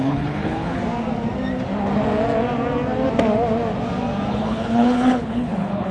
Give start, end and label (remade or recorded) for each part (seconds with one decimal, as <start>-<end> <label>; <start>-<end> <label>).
0.0-0.8 remade; 0.8-4.3 recorded; 4.3-5.9 remade